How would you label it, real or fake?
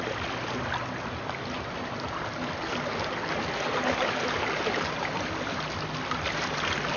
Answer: real